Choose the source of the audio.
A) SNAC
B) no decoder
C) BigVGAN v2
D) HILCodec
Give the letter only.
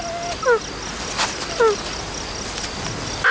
B